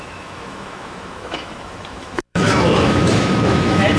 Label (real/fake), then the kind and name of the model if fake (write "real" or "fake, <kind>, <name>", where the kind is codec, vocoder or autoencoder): fake, autoencoder, DAC-VAE